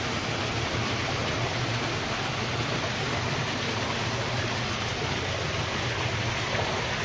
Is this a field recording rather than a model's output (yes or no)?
yes